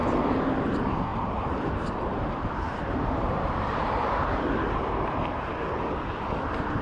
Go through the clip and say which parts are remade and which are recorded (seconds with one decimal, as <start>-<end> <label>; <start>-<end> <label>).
0.0-0.7 remade; 0.7-1.1 recorded; 1.1-4.4 remade; 4.4-6.8 recorded